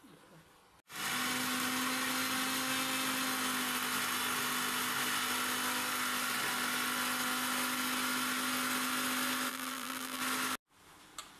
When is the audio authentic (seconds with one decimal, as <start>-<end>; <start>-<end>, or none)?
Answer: 0.0-9.5; 10.2-11.4